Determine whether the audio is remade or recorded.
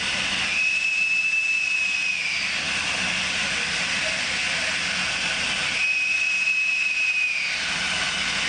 recorded